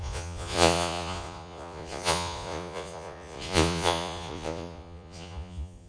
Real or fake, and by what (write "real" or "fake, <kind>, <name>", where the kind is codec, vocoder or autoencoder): fake, vocoder, Vocos